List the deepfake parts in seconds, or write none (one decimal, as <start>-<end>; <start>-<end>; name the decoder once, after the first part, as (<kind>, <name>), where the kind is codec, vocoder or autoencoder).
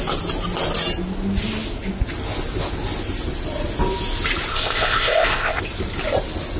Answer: 4.5-5.6 (codec, ZipCodec)